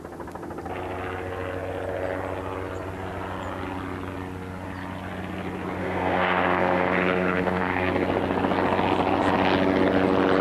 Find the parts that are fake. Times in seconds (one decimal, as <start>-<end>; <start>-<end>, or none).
5.8-7.9